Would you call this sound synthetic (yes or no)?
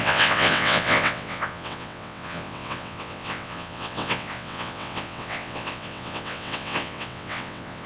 yes